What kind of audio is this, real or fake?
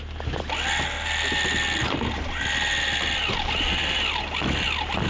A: real